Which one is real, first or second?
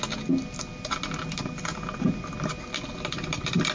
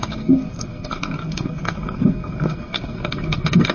first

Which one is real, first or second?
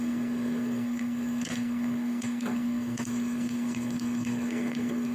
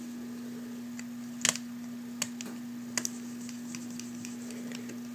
second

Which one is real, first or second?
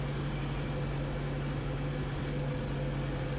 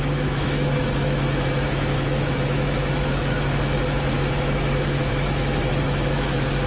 first